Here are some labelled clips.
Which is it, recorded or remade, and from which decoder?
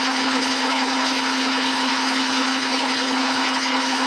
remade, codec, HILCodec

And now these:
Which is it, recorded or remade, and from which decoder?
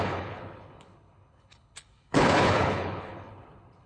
remade, codec, HILCodec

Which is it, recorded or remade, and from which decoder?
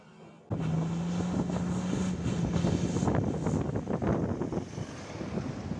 recorded